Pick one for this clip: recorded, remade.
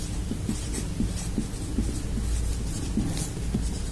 recorded